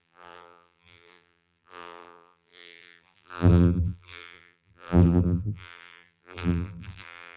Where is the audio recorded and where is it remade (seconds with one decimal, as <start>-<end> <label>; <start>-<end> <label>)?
0.0-7.4 remade